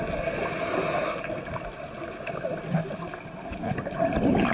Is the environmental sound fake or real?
real